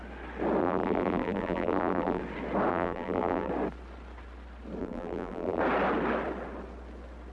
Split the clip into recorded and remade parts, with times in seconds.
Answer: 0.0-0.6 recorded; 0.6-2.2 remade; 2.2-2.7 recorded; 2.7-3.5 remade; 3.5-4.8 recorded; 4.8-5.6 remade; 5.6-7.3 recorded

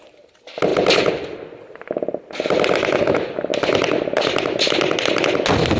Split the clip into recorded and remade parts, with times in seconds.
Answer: 0.0-3.5 recorded; 3.5-5.1 remade; 5.1-5.8 recorded

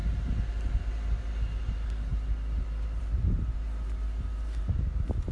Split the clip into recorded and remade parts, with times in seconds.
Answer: 0.0-5.3 recorded